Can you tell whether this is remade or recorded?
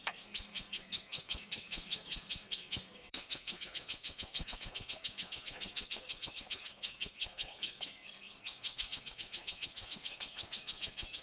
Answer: remade